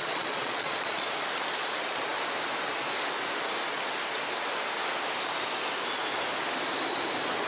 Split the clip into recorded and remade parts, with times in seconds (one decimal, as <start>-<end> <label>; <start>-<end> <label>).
0.0-1.1 remade; 1.1-7.5 recorded